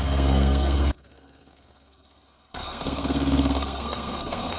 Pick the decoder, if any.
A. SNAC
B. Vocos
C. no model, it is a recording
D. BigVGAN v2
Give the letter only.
A